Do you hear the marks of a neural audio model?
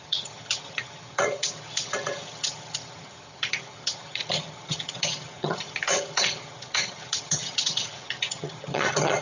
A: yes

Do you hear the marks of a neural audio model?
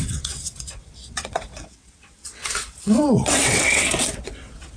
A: yes